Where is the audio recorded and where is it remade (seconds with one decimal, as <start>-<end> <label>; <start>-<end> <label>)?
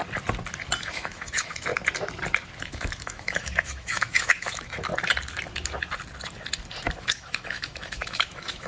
0.0-0.8 recorded; 0.8-1.7 remade; 1.7-2.6 recorded; 2.6-4.9 remade; 4.9-7.0 recorded; 7.0-8.7 remade